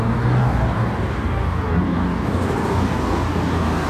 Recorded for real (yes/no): no